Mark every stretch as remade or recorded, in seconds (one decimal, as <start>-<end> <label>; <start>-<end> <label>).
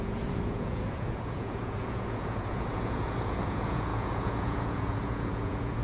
0.0-5.8 remade